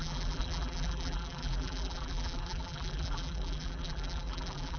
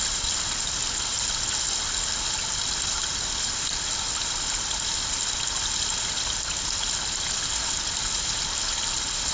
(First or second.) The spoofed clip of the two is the first